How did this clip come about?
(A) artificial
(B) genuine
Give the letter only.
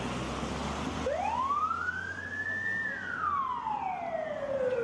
B